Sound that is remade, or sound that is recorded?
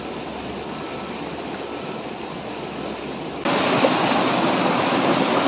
remade